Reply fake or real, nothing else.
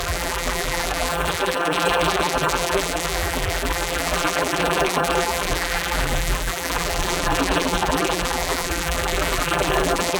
fake